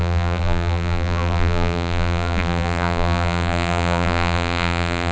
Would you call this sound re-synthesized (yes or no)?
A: yes